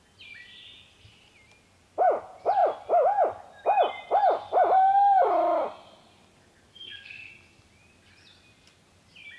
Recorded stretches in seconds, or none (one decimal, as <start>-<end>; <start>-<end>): 0.0-6.7; 7.3-9.4